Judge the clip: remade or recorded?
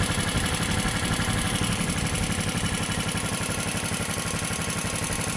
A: recorded